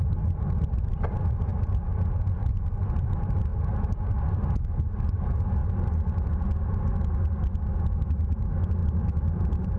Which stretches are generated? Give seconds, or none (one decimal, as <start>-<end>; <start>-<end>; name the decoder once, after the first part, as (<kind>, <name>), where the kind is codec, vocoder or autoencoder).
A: 8.8-9.8 (vocoder, BigVGAN v2)